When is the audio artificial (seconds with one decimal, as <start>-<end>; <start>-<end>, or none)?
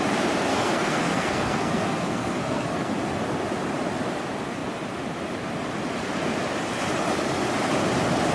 0.5-2.9